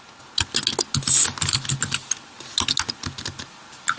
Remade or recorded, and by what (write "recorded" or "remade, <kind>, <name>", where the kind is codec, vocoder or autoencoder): recorded